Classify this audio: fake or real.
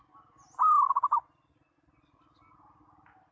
real